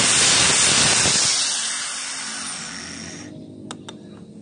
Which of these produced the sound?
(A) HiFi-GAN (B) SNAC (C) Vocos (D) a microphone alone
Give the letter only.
D